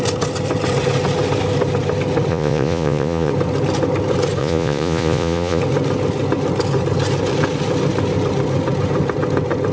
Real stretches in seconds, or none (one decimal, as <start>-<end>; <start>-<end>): 0.0-2.3; 3.3-4.4; 5.6-9.7